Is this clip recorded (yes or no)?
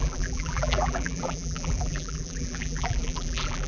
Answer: no